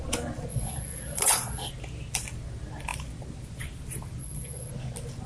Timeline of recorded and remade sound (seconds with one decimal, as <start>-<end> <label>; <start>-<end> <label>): 0.0-0.5 recorded; 0.5-1.7 remade; 1.7-4.2 recorded; 4.2-4.7 remade; 4.7-5.3 recorded